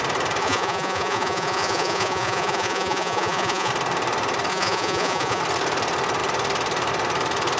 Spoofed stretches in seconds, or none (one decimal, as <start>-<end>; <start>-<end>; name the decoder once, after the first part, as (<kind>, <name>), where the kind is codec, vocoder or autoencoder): 0.4-3.7 (vocoder, Vocos); 4.5-5.4